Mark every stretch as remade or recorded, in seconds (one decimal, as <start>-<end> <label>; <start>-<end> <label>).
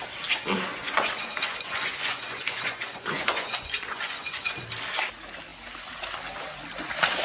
0.0-0.7 recorded; 0.7-4.5 remade; 4.5-7.2 recorded